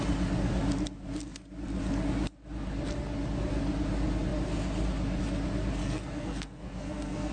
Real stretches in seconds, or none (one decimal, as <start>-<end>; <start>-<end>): 0.0-5.8